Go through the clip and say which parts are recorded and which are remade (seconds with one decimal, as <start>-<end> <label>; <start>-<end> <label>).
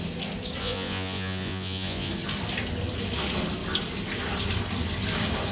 0.0-0.6 recorded; 0.6-2.1 remade; 2.1-5.5 recorded